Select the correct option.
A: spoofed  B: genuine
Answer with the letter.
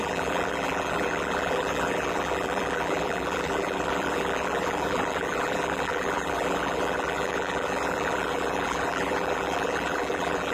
A